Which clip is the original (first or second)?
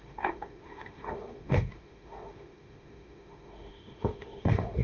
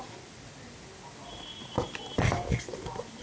second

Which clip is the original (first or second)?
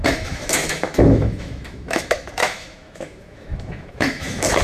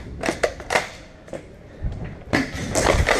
second